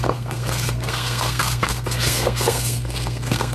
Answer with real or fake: fake